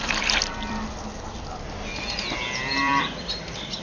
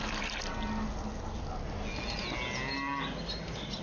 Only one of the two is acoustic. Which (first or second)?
second